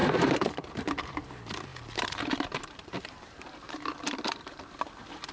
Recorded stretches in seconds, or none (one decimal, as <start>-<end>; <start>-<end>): 1.2-1.7